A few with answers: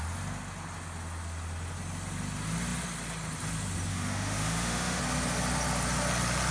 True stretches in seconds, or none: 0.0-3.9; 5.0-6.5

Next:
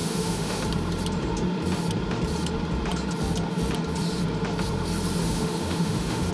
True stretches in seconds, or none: 0.6-5.2

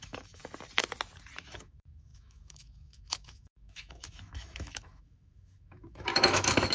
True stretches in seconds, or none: 0.4-1.4

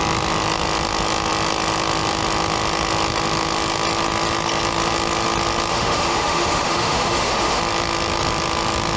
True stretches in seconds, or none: 0.0-5.7; 7.6-9.0

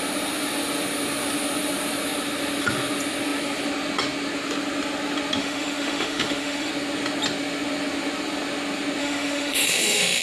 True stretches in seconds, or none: 0.0-5.4; 6.7-9.0